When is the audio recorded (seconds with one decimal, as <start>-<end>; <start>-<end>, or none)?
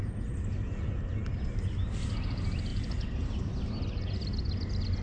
0.0-5.0